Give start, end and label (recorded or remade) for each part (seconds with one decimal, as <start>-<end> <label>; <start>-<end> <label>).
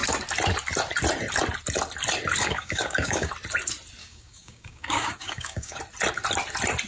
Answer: 0.0-2.4 recorded; 2.4-3.3 remade; 3.3-4.0 recorded; 4.0-5.8 remade; 5.8-6.9 recorded